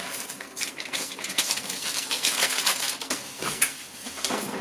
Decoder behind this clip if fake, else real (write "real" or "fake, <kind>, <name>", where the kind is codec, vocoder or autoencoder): fake, codec, SNAC